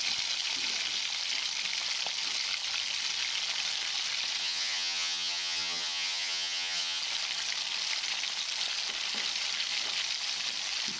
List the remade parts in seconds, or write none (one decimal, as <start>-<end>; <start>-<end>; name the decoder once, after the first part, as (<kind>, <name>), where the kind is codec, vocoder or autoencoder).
4.4-7.0 (vocoder, HiFi-GAN)